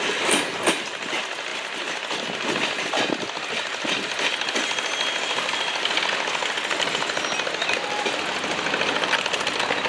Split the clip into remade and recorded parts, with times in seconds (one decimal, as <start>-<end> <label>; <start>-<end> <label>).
0.0-9.9 recorded